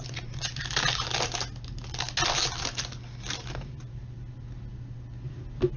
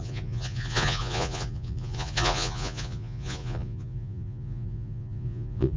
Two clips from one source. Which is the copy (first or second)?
second